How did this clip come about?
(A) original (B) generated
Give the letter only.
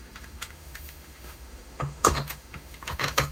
B